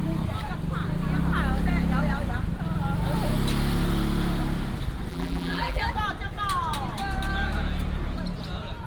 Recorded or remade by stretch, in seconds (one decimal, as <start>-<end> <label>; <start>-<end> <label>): 0.0-5.1 recorded; 5.1-5.8 remade; 5.8-8.9 recorded